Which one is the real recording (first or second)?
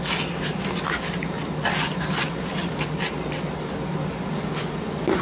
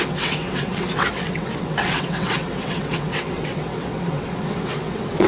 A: first